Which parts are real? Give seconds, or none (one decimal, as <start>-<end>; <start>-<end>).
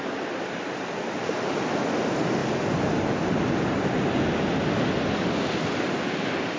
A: 0.0-6.6